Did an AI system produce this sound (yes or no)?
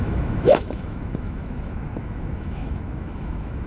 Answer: yes